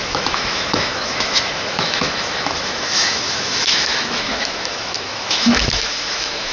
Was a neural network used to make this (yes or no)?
yes